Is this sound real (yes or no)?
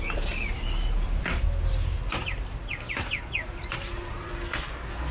no